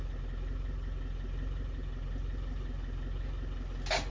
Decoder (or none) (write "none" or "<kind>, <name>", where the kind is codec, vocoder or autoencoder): none